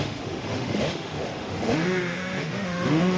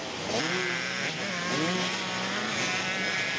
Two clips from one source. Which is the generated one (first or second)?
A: first